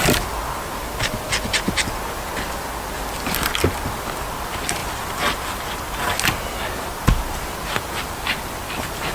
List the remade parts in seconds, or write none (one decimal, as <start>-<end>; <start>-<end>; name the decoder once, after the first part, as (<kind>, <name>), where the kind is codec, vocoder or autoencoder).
none